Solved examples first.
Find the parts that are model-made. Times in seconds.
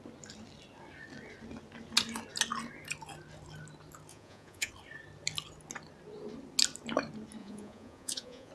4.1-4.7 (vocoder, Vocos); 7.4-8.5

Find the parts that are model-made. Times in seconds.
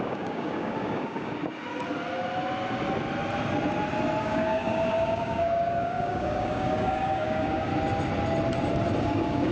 0.0-1.4 (codec, DAC); 4.2-7.7; 9.0-9.5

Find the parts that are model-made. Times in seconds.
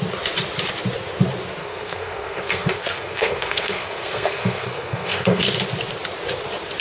1.6-5.4 (codec, SNAC)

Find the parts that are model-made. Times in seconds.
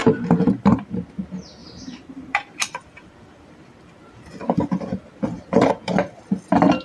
0.0-0.8 (vocoder, BigVGAN v2); 1.6-5.7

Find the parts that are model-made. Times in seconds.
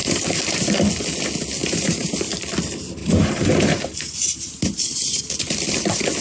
0.0-0.7 (vocoder, BigVGAN v2); 1.6-2.3; 3.0-5.3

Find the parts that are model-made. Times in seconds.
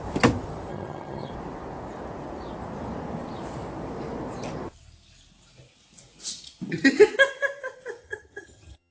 0.7-1.3 (vocoder, HiFi-GAN); 8.0-8.9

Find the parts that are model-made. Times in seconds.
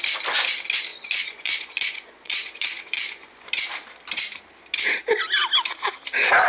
0.9-3.5 (vocoder, Vocos)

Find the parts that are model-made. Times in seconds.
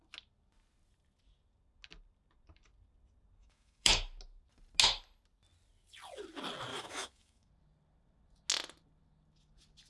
3.4-3.9 (autoencoder, DAC-VAE); 6.7-7.5